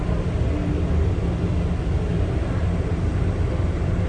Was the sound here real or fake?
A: real